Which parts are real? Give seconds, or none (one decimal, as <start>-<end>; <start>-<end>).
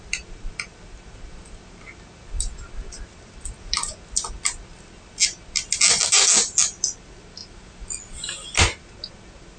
0.0-9.6